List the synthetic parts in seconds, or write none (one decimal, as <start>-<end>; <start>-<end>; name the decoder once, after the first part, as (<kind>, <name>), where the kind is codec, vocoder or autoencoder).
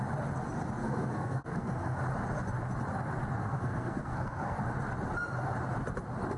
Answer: 0.8-2.0 (codec, SNAC); 3.4-4.6